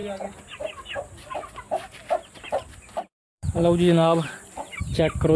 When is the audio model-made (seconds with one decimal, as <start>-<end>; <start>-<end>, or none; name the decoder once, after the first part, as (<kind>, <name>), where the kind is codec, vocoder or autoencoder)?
3.3-4.8 (vocoder, BigVGAN v2)